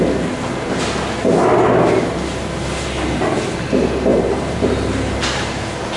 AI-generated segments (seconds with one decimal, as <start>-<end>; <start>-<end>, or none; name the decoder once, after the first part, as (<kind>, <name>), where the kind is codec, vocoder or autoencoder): 4.1-4.7 (vocoder, BigVGAN v2)